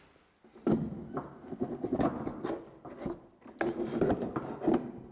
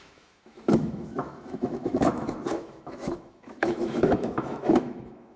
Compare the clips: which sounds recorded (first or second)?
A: first